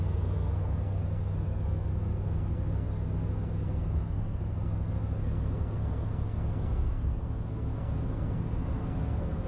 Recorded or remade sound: remade